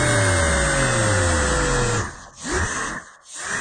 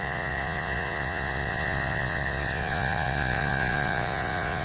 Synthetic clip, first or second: second